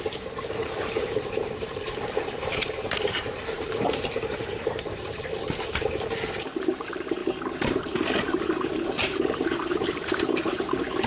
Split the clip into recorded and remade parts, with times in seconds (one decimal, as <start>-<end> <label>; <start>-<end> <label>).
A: 0.0-7.2 remade; 7.2-8.4 recorded; 8.4-11.1 remade